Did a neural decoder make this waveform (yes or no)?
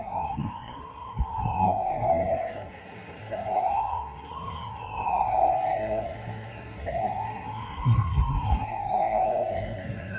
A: yes